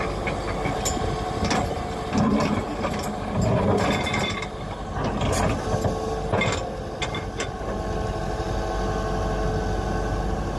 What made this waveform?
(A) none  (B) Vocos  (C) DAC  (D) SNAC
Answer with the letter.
A